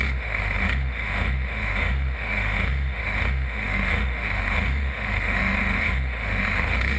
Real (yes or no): no